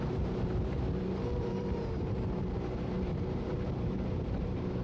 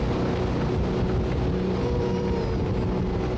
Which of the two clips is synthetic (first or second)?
first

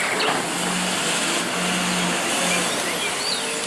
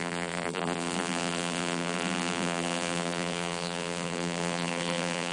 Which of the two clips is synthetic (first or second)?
second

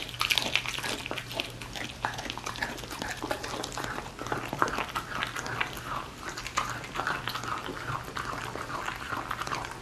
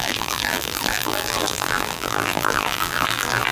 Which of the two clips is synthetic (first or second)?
second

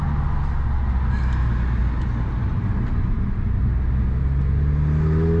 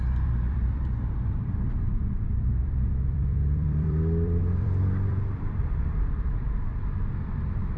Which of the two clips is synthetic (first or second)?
second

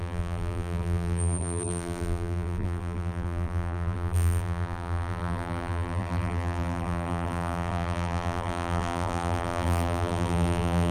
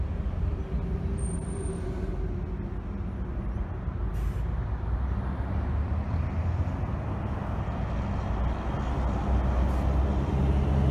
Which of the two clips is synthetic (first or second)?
first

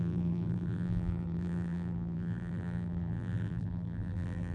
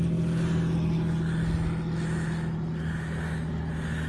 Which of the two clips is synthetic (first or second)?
first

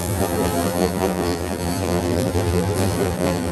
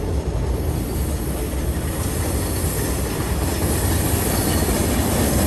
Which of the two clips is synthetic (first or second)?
first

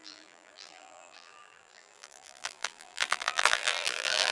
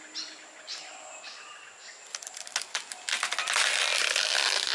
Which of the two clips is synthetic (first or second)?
first